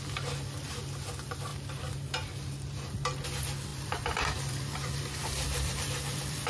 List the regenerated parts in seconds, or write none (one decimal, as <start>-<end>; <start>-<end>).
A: 1.5-2.1; 3.7-6.5